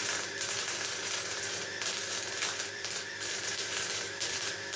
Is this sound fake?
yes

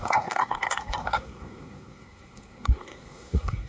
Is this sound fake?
yes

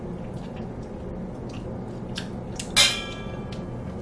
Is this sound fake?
no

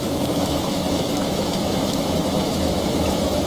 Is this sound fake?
yes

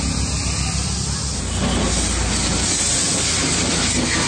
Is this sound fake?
no